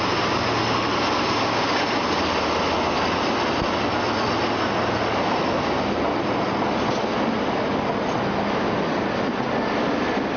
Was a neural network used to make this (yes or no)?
no